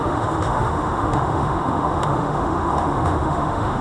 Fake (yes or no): yes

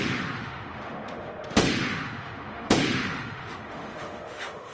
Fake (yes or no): yes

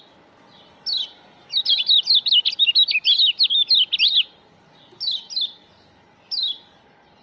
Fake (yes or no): no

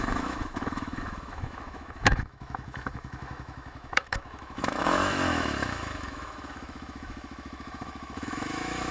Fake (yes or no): yes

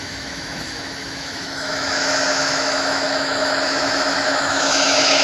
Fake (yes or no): yes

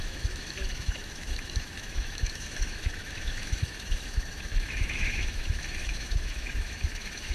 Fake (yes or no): yes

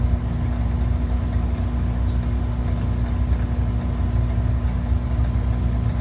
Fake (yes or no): no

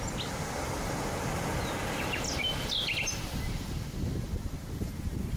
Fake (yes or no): no